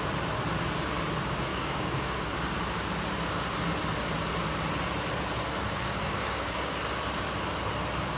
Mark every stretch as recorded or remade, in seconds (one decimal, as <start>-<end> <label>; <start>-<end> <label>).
0.0-1.5 recorded; 1.5-2.3 remade; 2.3-5.6 recorded; 5.6-6.8 remade; 6.8-8.2 recorded